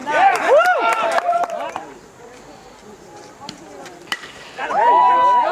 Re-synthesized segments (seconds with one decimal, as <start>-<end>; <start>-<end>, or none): 0.0-2.2; 2.8-4.7